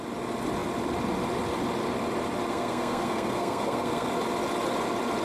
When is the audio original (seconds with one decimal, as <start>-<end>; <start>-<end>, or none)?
0.0-2.5; 4.1-5.2